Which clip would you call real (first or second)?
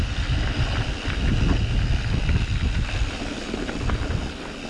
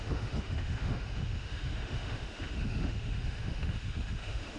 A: first